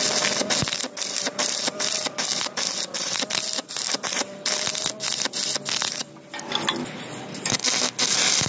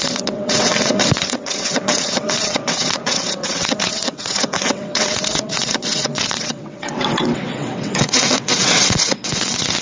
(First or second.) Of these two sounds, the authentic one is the first